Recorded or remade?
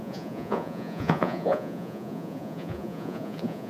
remade